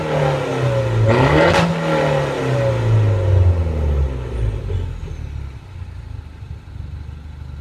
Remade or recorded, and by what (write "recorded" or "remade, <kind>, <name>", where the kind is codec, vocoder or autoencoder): recorded